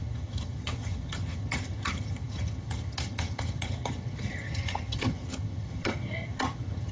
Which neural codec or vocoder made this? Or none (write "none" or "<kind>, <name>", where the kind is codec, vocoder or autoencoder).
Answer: vocoder, HiFi-GAN